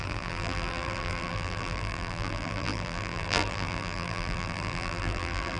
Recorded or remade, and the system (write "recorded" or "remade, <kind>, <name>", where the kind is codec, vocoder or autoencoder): remade, vocoder, BigVGAN v2